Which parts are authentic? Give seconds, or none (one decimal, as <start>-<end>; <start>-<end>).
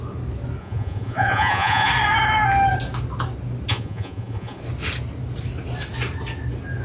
0.0-0.6; 1.9-3.7; 4.6-6.8